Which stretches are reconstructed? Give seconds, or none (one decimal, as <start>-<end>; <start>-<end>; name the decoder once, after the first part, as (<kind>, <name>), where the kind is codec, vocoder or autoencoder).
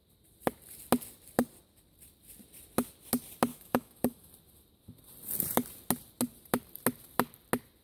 3.5-4.3 (autoencoder, DAC-VAE)